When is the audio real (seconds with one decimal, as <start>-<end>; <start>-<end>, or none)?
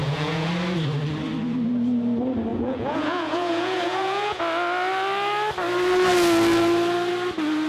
0.5-2.5; 4.4-7.7